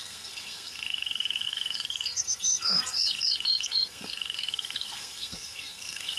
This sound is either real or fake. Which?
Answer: fake